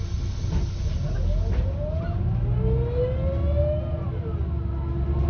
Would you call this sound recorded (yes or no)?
yes